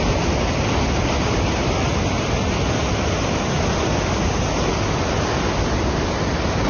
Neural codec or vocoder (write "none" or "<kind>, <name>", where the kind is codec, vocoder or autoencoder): none